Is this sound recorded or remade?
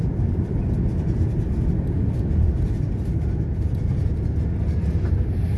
recorded